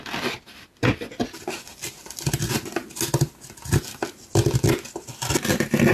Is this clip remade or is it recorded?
recorded